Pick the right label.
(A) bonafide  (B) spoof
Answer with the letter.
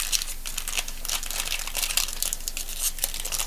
A